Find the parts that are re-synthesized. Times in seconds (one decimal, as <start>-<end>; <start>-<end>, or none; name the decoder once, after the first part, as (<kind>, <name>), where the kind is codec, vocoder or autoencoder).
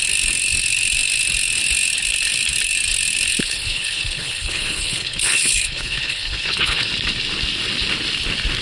3.4-6.9 (codec, HILCodec)